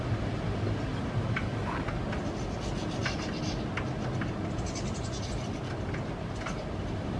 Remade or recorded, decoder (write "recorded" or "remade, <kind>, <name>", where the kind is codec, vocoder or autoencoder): recorded